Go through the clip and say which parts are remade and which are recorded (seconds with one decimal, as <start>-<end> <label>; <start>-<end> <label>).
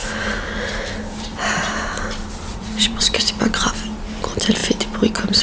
0.0-2.5 recorded; 2.5-3.4 remade; 3.4-5.4 recorded